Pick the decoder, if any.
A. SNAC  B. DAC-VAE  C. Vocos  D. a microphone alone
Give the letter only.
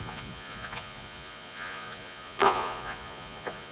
C